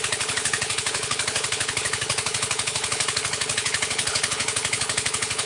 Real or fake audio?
fake